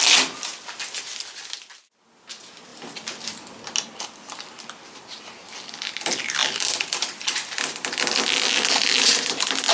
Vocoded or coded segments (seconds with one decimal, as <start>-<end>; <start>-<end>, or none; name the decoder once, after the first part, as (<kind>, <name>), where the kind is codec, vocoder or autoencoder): none